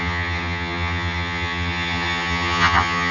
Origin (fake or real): fake